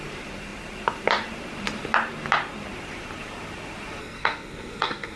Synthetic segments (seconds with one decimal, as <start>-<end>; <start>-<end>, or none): 4.0-5.2